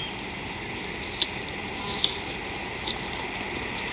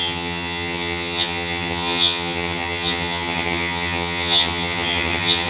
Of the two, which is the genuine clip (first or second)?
first